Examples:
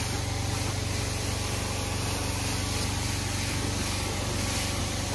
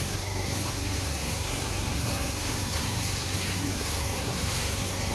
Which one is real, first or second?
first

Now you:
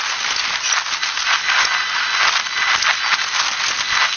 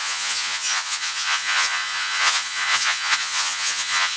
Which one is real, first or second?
first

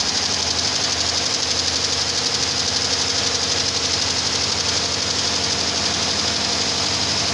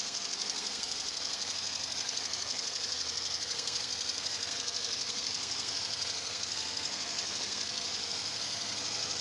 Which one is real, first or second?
first